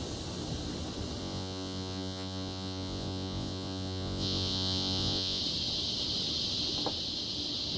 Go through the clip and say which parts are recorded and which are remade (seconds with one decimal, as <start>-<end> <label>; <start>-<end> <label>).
0.0-1.2 recorded; 1.2-5.4 remade; 5.4-7.8 recorded